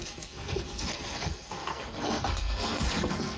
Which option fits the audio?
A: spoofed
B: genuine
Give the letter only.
A